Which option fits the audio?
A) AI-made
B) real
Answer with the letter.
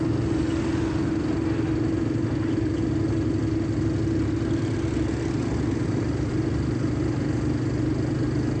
B